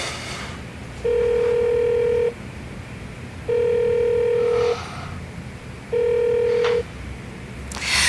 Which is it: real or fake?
real